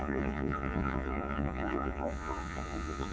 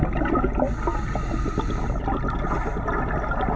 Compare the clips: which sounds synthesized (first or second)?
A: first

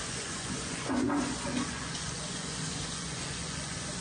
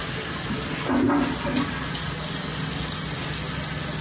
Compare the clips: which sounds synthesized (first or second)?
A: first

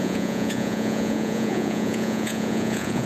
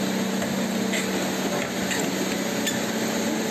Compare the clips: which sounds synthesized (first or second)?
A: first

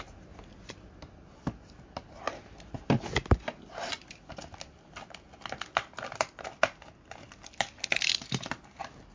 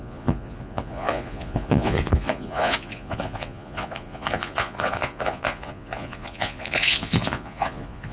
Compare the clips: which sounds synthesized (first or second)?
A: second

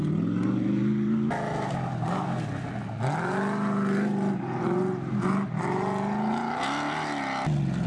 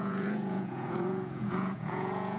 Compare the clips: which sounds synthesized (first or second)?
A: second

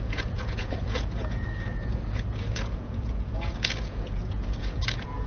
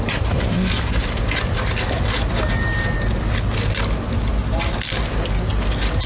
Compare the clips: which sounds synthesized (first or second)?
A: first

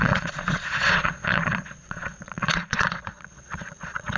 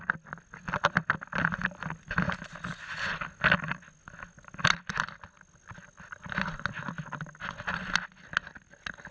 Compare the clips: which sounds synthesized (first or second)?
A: first